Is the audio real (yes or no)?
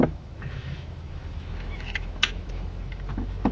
no